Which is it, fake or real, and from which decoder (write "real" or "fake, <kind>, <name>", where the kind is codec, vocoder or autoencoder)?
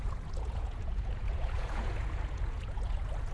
fake, vocoder, Vocos